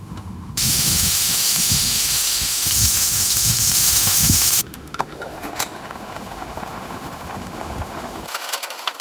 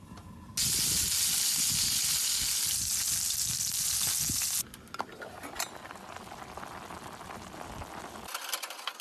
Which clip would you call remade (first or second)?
first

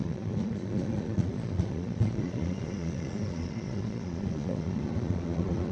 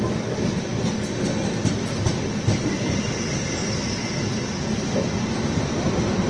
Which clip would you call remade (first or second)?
first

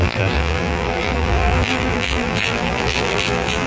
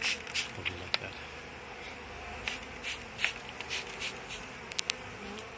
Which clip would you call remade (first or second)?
first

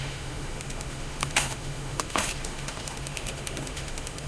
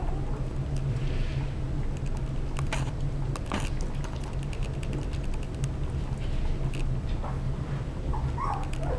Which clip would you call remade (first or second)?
first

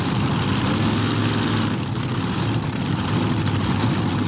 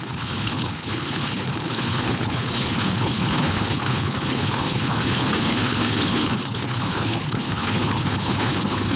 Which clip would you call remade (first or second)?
second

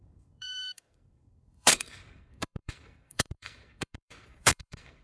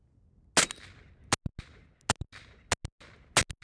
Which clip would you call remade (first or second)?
first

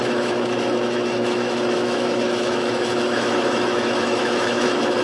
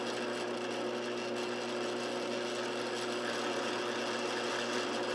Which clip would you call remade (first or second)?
first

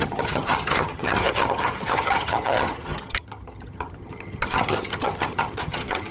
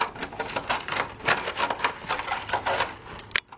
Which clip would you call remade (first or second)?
first